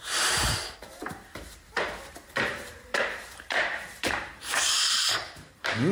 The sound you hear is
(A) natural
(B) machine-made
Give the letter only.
B